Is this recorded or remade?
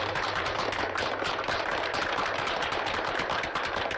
remade